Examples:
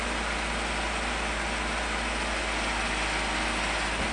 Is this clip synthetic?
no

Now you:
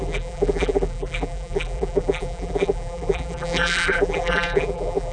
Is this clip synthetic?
yes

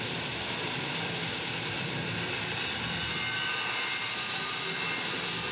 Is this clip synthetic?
no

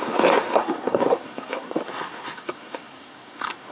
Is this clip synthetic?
yes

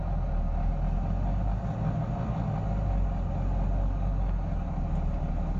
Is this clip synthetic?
no